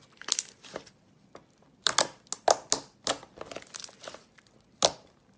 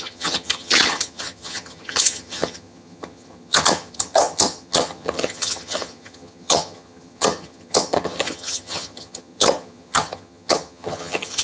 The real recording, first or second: first